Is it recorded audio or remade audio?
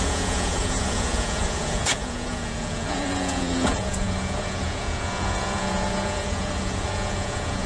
remade